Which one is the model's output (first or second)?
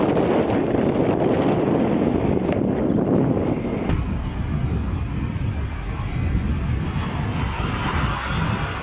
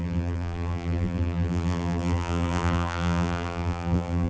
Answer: second